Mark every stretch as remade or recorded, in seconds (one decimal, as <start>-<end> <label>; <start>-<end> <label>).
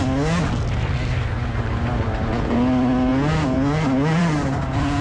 0.0-5.0 recorded